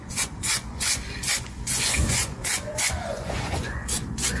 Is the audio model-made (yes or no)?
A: yes